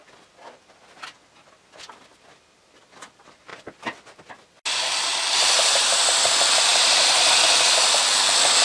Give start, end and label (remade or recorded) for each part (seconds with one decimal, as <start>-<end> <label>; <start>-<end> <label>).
0.0-5.1 recorded; 5.1-6.3 remade; 6.3-6.7 recorded; 6.7-8.0 remade; 8.0-8.6 recorded